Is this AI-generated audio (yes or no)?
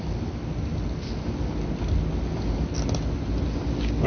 no